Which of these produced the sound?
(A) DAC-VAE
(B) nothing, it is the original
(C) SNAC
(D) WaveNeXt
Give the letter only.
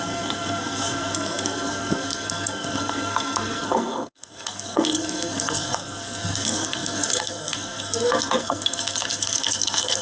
C